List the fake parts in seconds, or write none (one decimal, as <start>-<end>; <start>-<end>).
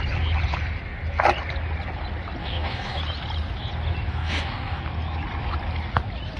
2.4-3.0; 4.1-4.8